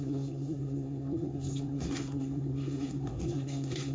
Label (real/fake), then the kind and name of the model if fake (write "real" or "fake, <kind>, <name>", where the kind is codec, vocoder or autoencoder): fake, codec, SNAC